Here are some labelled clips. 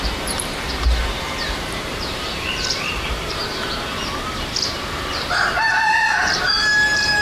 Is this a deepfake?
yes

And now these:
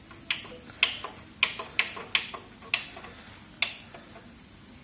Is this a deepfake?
no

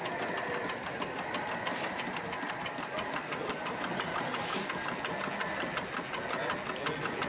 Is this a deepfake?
no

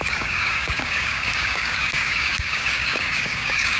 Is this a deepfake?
yes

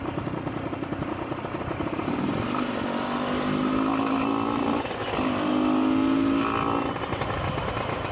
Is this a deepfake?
no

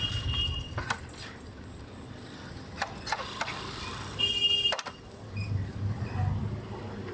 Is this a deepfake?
no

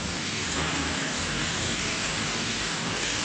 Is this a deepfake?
yes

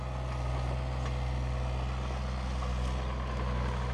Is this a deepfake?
no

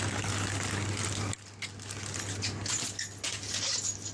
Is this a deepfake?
no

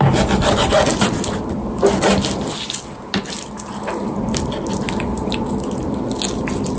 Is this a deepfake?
no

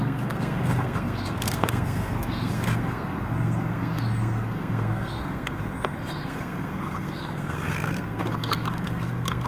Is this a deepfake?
yes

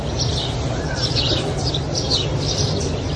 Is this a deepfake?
yes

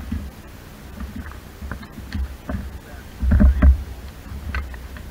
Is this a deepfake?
no